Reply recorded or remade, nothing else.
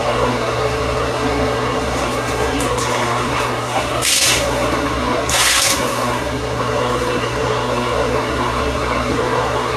remade